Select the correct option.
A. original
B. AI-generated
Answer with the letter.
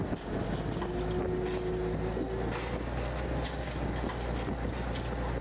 A